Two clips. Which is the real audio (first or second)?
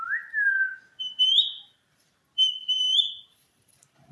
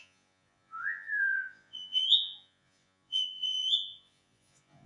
first